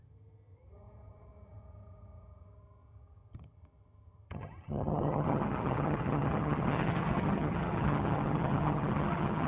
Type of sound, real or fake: fake